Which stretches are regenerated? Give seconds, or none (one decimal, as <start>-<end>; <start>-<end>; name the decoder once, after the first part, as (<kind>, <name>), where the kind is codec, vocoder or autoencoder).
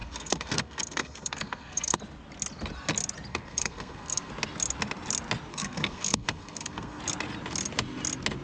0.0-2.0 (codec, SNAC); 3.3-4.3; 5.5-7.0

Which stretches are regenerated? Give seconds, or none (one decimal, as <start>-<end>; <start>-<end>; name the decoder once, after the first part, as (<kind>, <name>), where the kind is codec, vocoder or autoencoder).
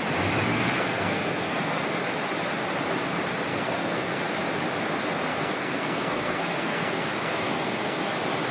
0.5-1.8 (codec, SNAC); 3.5-4.2; 5.3-8.0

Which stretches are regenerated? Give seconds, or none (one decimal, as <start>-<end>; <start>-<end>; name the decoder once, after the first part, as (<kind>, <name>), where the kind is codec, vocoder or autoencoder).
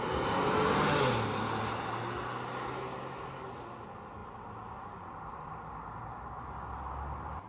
none